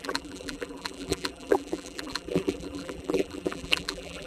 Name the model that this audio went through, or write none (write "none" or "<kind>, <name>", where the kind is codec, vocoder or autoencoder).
vocoder, BigVGAN v2